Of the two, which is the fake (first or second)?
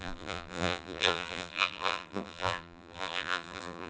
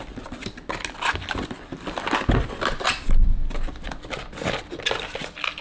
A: first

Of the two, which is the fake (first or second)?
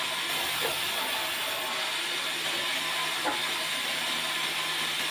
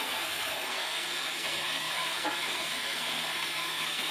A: second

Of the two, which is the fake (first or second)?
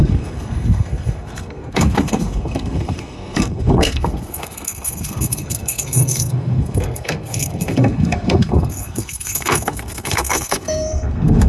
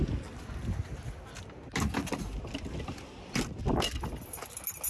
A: first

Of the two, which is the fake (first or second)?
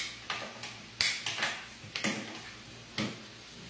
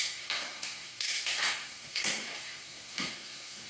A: second